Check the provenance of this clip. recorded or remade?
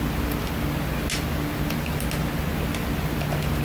recorded